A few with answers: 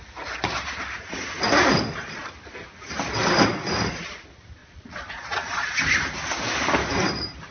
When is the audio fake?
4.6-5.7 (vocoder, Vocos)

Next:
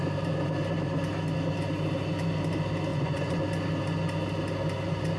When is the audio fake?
2.9-3.4 (vocoder, Vocos)

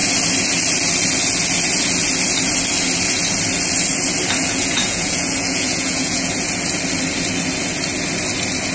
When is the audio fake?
4.4-6.3 (vocoder, Vocos)